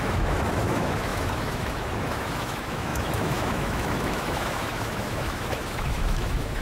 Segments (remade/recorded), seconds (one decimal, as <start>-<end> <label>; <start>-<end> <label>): 0.0-6.6 remade

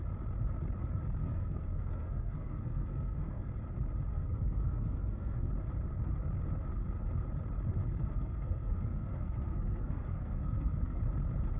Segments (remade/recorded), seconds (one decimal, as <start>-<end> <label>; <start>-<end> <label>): 0.0-1.2 recorded; 1.2-3.5 remade; 3.5-4.1 recorded; 4.1-5.5 remade; 5.5-8.0 recorded; 8.0-11.0 remade; 11.0-11.6 recorded

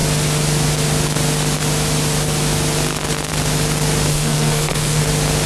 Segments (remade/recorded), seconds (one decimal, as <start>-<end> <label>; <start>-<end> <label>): 0.0-4.1 recorded; 4.1-5.0 remade; 5.0-5.5 recorded

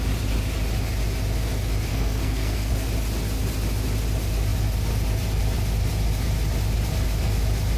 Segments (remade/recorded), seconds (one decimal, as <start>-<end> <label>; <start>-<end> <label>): 0.0-1.9 recorded; 1.9-2.7 remade; 2.7-7.8 recorded